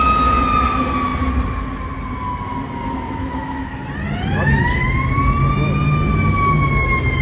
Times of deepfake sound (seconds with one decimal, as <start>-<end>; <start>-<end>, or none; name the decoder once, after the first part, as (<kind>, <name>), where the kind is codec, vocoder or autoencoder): 3.2-3.7 (autoencoder, DAC-VAE)